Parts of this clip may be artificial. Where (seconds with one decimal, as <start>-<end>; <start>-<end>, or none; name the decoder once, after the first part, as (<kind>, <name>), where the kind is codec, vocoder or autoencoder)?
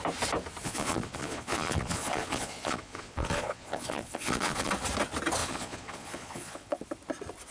0.6-4.7 (vocoder, Vocos); 5.4-6.8